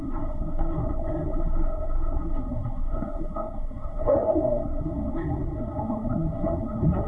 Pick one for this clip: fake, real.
fake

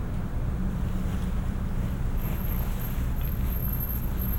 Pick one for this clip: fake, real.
real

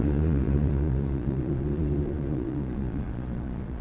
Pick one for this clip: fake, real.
fake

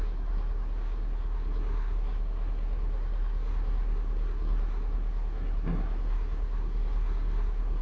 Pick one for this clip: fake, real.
fake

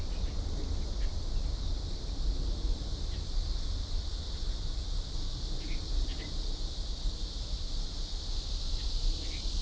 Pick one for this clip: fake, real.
real